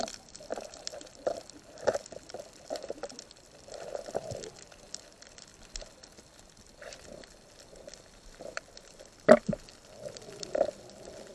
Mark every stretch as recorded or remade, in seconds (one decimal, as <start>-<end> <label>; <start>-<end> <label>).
0.0-5.5 remade; 5.5-6.4 recorded; 6.4-11.3 remade